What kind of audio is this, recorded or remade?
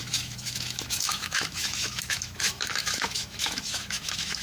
remade